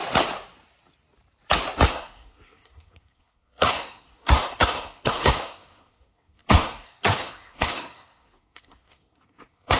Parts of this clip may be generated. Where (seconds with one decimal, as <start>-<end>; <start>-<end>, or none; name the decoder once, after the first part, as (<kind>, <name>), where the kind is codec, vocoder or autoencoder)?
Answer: 1.9-9.8 (codec, SNAC)